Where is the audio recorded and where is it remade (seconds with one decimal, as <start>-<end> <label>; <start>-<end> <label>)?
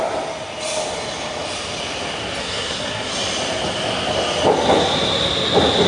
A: 0.0-2.4 recorded; 2.4-3.1 remade; 3.1-5.9 recorded